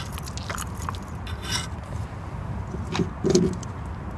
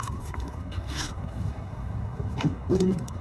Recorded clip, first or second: first